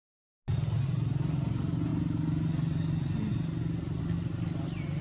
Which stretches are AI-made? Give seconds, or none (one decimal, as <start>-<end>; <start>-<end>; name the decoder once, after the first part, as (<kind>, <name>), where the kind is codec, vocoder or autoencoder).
none